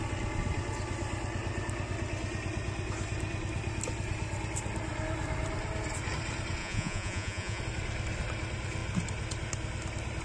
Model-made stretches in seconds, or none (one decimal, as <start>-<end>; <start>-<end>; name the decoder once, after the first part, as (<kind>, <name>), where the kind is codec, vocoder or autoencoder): 6.6-7.6 (vocoder, Vocos)